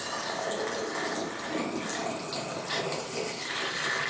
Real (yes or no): yes